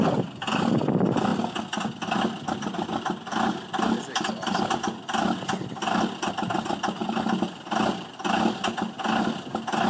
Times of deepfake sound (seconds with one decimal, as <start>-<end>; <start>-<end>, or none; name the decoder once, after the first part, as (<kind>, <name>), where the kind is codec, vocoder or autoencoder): none